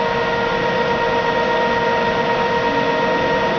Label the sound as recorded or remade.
recorded